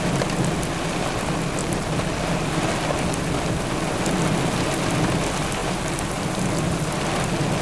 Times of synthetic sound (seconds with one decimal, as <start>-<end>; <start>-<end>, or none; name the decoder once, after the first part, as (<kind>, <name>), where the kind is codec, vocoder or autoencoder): 1.6-2.5 (vocoder, BigVGAN v2); 5.6-6.4